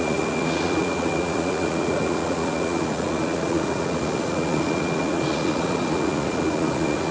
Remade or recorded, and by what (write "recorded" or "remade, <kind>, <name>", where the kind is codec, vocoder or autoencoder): remade, vocoder, Vocos